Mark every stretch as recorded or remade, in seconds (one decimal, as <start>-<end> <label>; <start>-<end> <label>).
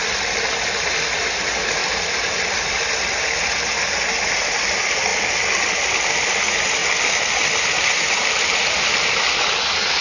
0.0-10.0 recorded